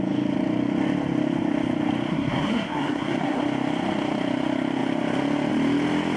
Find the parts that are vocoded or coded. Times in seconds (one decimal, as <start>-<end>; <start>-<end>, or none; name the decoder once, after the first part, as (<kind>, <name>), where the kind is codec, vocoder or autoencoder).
2.1-3.4 (codec, SNAC)

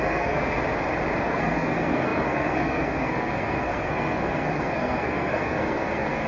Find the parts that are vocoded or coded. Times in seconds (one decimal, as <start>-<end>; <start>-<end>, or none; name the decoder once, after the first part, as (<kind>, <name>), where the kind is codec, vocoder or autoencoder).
0.0-0.6 (codec, SNAC); 1.2-6.3

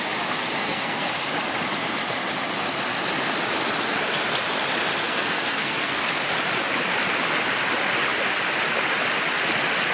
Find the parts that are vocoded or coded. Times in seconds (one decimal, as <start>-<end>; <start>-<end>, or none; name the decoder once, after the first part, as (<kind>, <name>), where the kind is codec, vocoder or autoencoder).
0.6-1.1 (codec, SNAC); 5.0-6.0

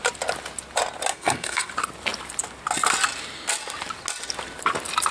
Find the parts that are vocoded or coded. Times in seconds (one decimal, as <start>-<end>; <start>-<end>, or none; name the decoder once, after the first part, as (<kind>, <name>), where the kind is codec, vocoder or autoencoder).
1.1-1.7 (codec, SNAC)

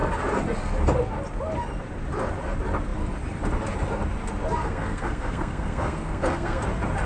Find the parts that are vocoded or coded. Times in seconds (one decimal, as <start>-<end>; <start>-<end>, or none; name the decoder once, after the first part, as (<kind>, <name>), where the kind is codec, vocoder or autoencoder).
4.6-6.6 (codec, SNAC)

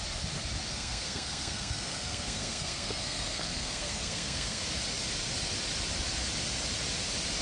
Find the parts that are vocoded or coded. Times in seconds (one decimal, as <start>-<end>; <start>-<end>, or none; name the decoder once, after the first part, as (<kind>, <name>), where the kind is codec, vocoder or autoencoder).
0.7-4.6 (codec, SNAC)